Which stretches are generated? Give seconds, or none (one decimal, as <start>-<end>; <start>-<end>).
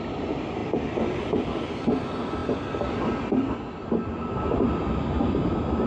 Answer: none